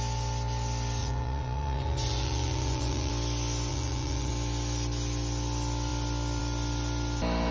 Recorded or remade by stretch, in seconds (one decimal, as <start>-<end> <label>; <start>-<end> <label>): 0.0-1.0 recorded; 1.0-3.1 remade; 3.1-3.7 recorded; 3.7-4.3 remade; 4.3-7.5 recorded